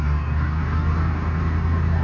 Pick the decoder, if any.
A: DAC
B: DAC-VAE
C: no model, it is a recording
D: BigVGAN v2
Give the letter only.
A